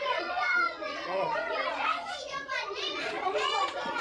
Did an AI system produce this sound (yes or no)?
yes